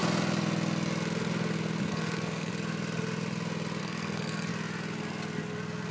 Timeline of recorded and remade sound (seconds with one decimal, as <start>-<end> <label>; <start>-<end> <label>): 0.0-1.9 recorded; 1.9-2.5 remade; 2.5-3.8 recorded; 3.8-4.5 remade; 4.5-5.9 recorded